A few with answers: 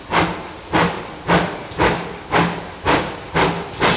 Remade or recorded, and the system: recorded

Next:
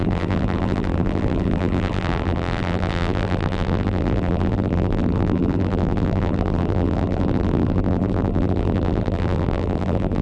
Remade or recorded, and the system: remade, vocoder, BigVGAN v2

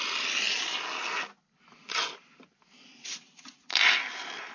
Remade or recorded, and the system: recorded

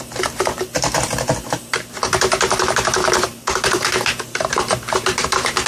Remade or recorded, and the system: remade, vocoder, BigVGAN v2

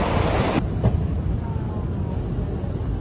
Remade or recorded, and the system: recorded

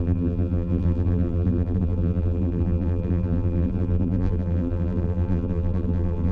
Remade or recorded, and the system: remade, vocoder, BigVGAN v2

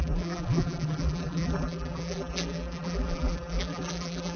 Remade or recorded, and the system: remade, vocoder, BigVGAN v2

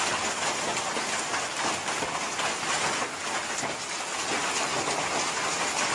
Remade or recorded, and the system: recorded